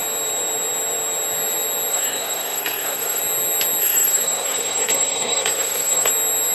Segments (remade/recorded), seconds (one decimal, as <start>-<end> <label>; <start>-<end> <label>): 0.0-1.9 recorded; 1.9-3.2 remade; 3.2-3.8 recorded; 3.8-6.1 remade; 6.1-6.5 recorded